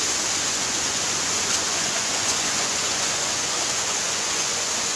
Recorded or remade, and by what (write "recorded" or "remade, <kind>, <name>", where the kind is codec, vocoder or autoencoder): remade, vocoder, Vocos